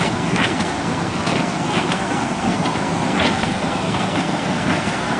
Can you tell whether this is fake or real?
fake